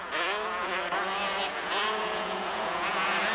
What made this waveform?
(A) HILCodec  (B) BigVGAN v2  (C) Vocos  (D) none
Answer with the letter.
C